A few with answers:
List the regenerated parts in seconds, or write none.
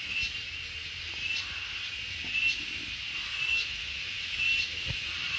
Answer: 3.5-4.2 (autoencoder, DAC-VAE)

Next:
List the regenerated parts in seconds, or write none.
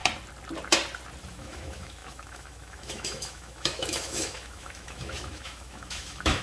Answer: 1.3-6.4 (autoencoder, DAC-VAE)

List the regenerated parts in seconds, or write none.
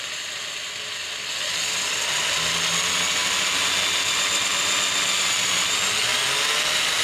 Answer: none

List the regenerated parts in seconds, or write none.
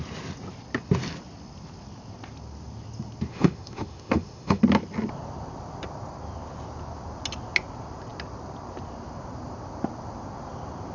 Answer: 3.3-4.6 (autoencoder, DAC-VAE)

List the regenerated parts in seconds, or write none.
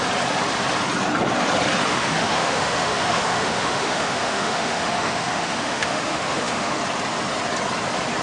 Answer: 1.9-6.8 (autoencoder, DAC-VAE)